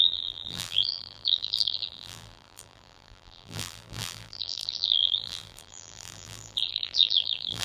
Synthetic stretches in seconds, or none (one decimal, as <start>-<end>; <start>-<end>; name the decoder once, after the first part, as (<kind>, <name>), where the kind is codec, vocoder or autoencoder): 0.0-7.6 (vocoder, BigVGAN v2)